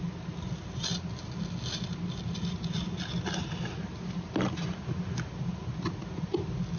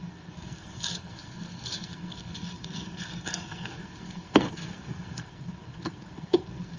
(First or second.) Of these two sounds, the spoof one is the second